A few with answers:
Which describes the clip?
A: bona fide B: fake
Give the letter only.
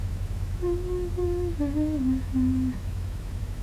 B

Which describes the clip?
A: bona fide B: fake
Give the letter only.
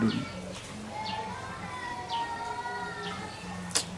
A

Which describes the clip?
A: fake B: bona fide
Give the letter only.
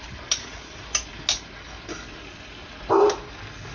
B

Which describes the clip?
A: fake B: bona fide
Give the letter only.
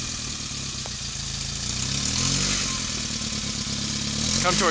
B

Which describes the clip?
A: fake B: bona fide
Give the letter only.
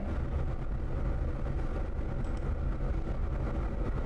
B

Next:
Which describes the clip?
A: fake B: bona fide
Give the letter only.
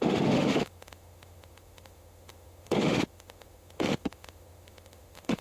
A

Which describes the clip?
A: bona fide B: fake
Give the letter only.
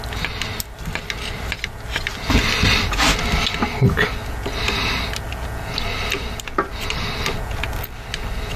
A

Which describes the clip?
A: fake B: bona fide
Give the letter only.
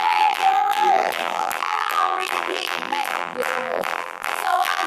A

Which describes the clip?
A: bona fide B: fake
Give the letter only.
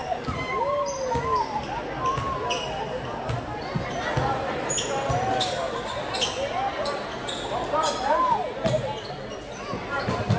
A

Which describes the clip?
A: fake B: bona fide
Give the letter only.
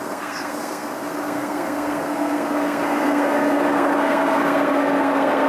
A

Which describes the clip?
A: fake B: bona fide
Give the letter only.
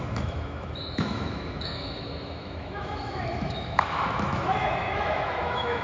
A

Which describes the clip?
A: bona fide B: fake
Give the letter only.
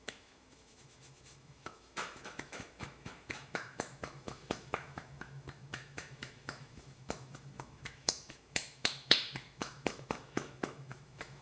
B